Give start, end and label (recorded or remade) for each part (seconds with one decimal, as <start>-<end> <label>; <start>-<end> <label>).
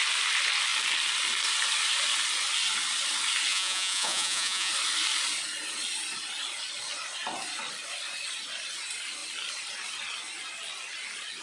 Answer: 0.0-3.5 recorded; 3.5-4.7 remade; 4.7-11.4 recorded